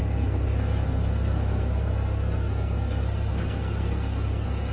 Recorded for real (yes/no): no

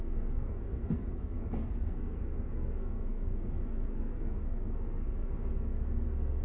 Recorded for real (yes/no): no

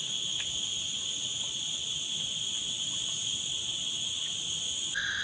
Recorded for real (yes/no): yes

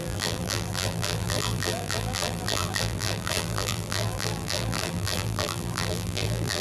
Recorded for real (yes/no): no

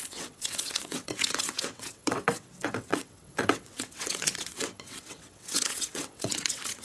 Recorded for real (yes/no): no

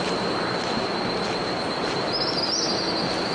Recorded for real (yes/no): yes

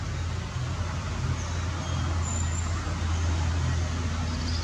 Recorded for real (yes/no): yes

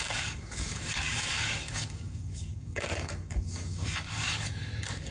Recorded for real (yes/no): no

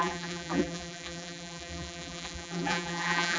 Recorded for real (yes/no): no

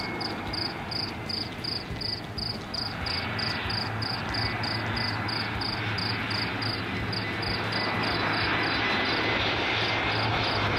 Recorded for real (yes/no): yes